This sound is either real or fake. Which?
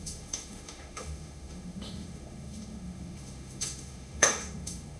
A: fake